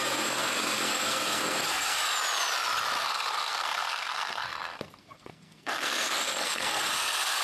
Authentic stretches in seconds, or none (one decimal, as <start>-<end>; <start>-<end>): 2.0-3.0